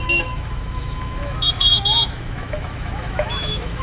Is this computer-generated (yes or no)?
yes